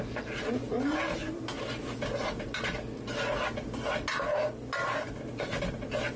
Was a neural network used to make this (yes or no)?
no